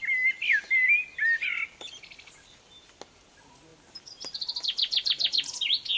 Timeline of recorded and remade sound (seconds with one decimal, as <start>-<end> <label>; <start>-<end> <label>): 0.0-6.0 recorded